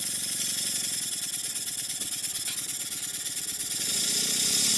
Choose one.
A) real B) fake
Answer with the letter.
A